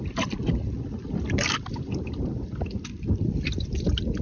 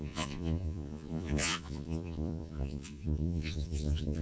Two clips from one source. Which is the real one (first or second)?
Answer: first